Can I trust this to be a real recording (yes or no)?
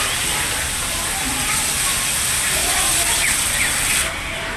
yes